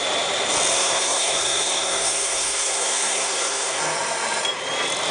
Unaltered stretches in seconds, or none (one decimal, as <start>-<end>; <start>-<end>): 0.0-0.7; 3.8-5.1